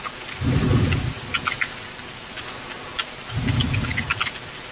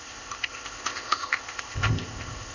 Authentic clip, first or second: first